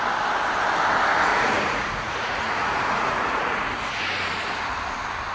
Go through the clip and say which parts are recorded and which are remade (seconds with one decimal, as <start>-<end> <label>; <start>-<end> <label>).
0.0-1.3 recorded; 1.3-4.0 remade; 4.0-5.3 recorded